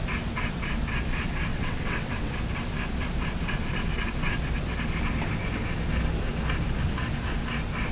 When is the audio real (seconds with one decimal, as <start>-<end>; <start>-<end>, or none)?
0.0-1.5; 2.3-7.9